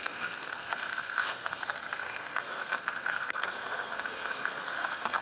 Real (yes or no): no